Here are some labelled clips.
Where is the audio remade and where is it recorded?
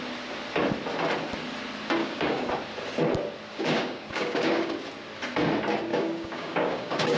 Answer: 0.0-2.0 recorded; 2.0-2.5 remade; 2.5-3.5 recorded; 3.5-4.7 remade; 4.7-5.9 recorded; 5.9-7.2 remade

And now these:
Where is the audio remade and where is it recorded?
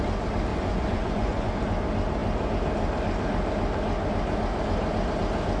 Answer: 0.0-0.5 recorded; 0.5-1.5 remade; 1.5-5.6 recorded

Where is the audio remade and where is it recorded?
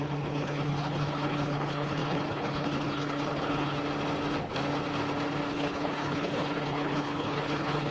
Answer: 0.0-3.8 remade; 3.8-5.5 recorded; 5.5-7.9 remade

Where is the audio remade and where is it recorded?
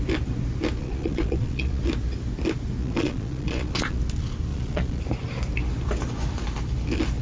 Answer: 0.0-0.8 recorded; 0.8-1.8 remade; 1.8-2.8 recorded; 2.8-4.0 remade; 4.0-4.5 recorded; 4.5-5.0 remade; 5.0-7.2 recorded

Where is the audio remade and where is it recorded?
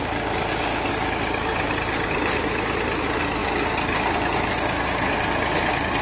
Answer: 0.0-6.0 recorded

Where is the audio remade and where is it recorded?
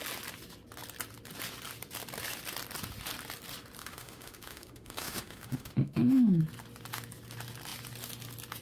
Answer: 0.0-3.8 recorded; 3.8-6.4 remade; 6.4-8.6 recorded